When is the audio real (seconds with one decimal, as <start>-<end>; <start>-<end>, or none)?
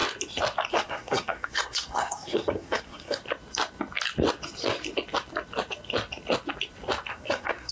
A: 0.0-0.7; 3.2-7.1